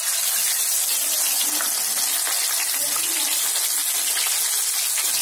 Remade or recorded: recorded